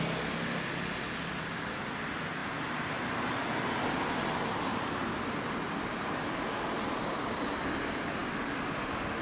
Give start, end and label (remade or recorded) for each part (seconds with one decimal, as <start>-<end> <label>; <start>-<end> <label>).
0.0-9.2 recorded